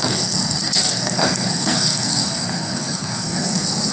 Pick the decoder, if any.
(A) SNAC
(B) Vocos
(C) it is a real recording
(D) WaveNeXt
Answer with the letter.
A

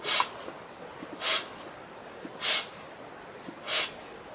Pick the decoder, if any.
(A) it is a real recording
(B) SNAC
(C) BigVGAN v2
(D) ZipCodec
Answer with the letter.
A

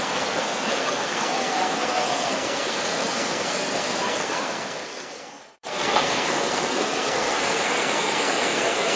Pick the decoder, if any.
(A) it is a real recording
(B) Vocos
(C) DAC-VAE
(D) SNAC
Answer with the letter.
D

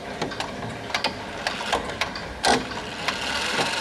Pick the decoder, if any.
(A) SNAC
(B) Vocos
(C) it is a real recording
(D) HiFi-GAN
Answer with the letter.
C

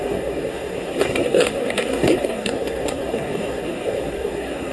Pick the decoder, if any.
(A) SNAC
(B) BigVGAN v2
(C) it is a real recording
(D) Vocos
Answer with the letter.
A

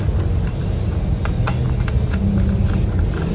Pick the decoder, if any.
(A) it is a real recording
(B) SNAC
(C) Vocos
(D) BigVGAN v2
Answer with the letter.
A